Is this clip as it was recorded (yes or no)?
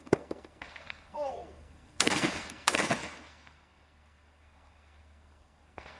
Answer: no